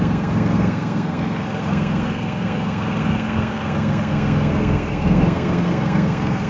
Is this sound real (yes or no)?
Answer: no